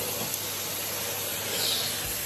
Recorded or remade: recorded